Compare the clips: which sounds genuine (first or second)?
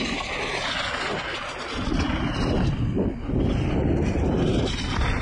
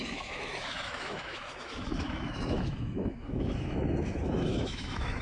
first